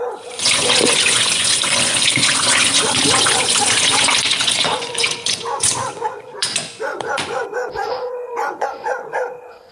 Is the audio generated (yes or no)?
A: yes